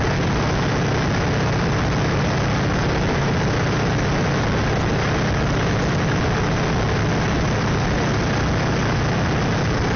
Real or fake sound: real